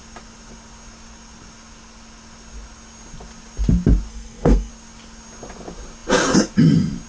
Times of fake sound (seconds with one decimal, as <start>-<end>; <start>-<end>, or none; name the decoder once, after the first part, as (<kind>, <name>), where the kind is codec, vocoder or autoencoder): 4.1-4.7 (codec, SNAC)

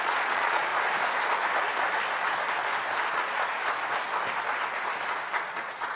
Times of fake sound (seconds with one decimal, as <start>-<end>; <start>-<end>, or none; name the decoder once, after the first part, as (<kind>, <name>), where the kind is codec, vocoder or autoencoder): 0.0-0.7 (vocoder, Vocos); 3.1-3.6; 5.4-6.0

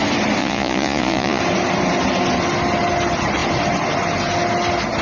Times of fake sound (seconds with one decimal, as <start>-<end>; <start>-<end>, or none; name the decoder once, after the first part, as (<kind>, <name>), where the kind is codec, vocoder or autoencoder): 0.4-1.4 (vocoder, Vocos)

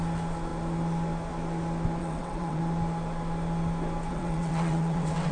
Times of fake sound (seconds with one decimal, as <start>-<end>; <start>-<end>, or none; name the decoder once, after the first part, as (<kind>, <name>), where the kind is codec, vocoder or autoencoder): 2.0-2.6 (vocoder, WaveNeXt); 4.1-5.3

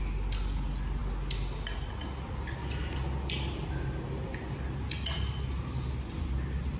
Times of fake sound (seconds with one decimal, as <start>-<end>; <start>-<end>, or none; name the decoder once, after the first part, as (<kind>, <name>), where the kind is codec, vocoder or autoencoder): none

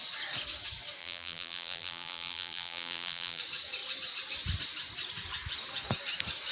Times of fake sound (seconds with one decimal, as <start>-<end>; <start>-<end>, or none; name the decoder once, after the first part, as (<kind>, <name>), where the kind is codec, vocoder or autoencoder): 1.0-3.4 (vocoder, BigVGAN v2)